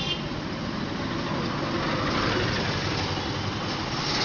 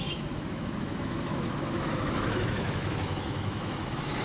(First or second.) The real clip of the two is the first